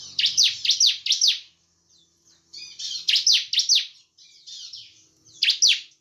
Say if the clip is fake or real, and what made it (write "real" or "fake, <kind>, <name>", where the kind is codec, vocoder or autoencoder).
real